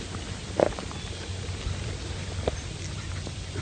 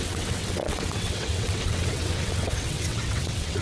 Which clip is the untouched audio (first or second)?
first